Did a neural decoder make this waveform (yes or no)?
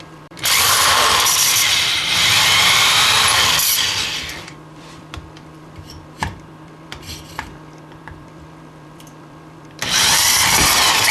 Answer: yes